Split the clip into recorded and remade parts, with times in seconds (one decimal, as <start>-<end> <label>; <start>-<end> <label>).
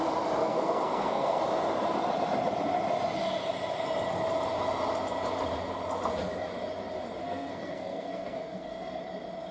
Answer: 0.0-0.4 recorded; 0.4-1.4 remade; 1.4-7.2 recorded; 7.2-9.0 remade; 9.0-9.5 recorded